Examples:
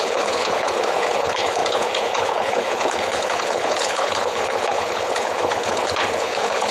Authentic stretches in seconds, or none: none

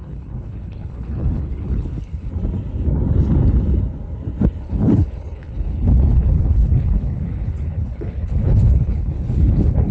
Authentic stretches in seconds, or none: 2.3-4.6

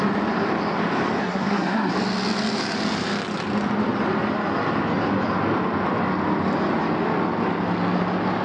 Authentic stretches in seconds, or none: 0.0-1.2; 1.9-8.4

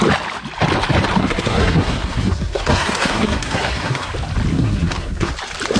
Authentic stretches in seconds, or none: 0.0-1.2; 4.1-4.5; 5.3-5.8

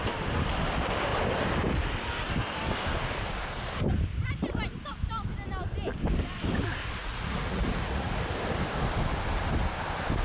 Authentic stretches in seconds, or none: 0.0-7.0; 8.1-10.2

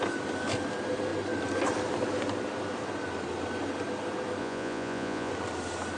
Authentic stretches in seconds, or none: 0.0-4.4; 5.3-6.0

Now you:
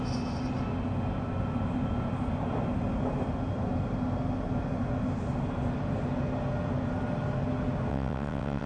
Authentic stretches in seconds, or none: 0.0-7.9